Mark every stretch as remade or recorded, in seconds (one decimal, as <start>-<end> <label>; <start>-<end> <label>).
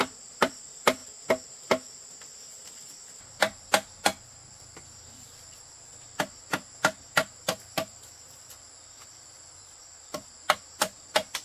0.0-1.0 remade; 1.0-3.2 recorded; 3.2-7.3 remade; 7.3-10.6 recorded; 10.6-11.4 remade